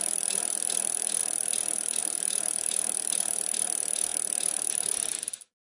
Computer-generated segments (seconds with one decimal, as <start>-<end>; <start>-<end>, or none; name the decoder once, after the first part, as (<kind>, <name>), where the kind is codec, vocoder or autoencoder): none